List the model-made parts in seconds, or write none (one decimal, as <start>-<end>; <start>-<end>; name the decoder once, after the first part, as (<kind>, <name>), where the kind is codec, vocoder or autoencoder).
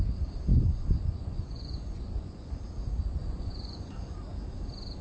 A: 0.5-2.6 (vocoder, Vocos); 3.2-3.9